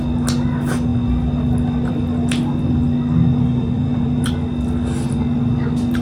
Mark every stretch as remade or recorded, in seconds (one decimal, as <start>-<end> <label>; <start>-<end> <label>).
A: 0.0-3.3 recorded; 3.3-4.3 remade; 4.3-6.0 recorded